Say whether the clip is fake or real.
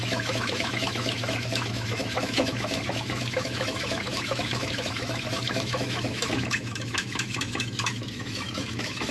fake